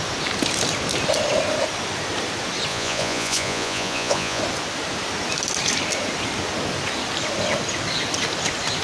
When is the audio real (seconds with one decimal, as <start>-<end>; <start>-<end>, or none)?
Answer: 0.0-2.7; 4.4-8.8